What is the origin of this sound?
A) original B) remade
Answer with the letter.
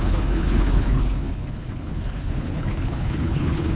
B